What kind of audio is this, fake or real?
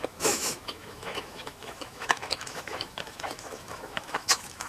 fake